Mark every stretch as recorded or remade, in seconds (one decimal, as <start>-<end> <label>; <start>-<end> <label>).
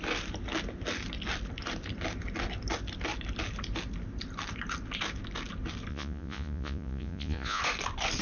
0.0-5.9 recorded; 5.9-7.6 remade; 7.6-8.2 recorded